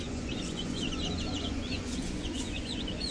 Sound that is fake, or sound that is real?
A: fake